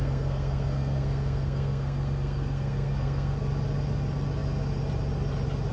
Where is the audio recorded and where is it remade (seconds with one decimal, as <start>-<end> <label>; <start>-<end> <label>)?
0.0-3.4 remade; 3.4-5.7 recorded

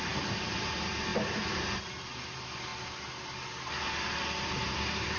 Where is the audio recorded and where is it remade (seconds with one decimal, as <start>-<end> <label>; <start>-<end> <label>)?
0.0-5.2 recorded